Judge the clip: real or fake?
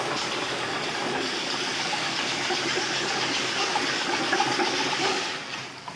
fake